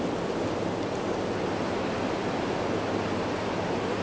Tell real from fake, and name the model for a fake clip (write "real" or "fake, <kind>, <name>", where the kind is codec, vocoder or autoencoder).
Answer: real